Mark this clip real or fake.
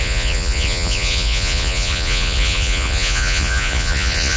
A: fake